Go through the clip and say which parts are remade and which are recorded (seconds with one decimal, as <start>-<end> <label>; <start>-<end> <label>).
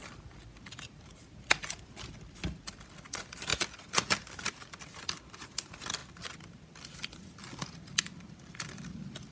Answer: 0.0-9.3 recorded